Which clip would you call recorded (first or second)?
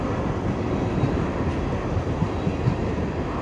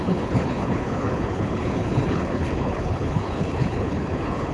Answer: first